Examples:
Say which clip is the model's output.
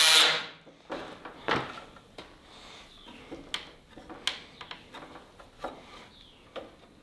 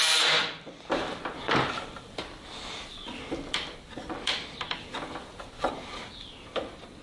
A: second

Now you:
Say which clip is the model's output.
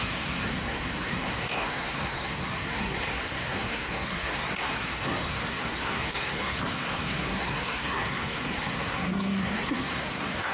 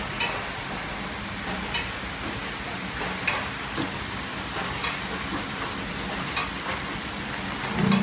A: first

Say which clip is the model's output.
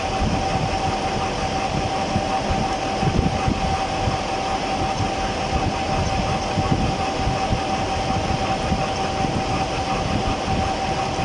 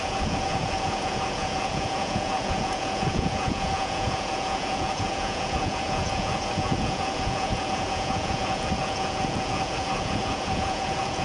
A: second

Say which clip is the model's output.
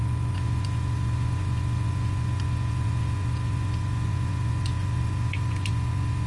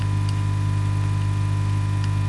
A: first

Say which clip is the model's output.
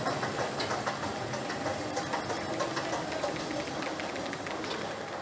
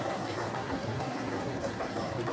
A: second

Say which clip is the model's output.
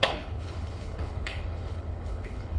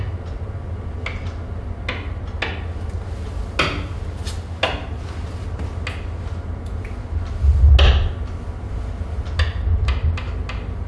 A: first